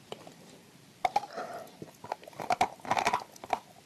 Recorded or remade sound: recorded